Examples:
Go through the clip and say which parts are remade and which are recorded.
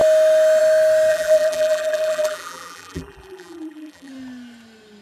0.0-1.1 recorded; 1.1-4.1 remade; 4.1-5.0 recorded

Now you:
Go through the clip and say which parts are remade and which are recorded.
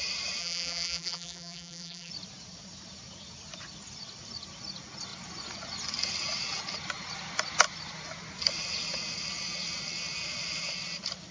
0.0-0.4 recorded; 0.4-2.1 remade; 2.1-11.3 recorded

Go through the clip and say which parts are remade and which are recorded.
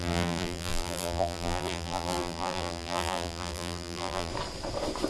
0.0-4.3 remade; 4.3-5.1 recorded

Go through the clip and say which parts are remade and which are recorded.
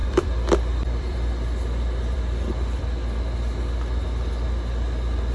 0.0-3.2 remade; 3.2-5.3 recorded